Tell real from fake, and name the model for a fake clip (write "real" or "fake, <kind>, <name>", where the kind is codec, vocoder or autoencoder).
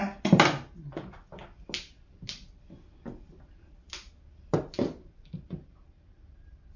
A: real